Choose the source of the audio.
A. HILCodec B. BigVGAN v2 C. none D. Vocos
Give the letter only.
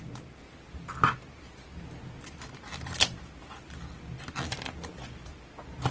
C